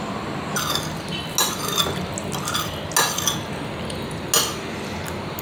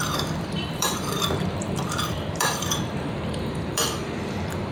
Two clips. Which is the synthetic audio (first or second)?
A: second